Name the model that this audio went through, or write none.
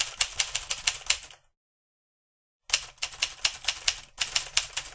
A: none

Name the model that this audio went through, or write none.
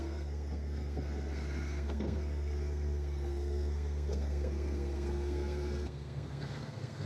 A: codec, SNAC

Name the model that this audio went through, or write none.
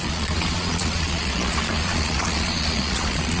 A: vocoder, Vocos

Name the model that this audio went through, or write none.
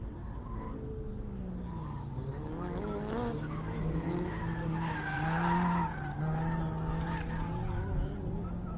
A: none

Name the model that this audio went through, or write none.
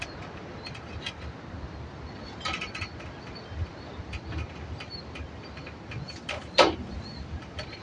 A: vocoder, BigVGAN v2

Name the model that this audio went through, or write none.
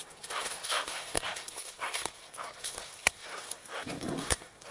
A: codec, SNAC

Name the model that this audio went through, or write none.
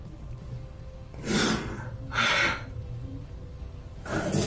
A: none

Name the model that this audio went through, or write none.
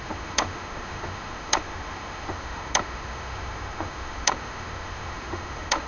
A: autoencoder, DAC-VAE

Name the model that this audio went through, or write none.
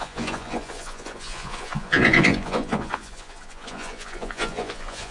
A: vocoder, Vocos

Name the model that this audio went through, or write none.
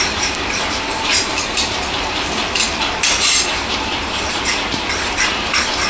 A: vocoder, BigVGAN v2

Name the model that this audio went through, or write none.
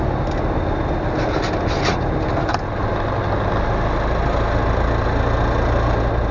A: none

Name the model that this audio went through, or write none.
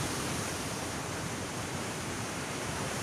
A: vocoder, BigVGAN v2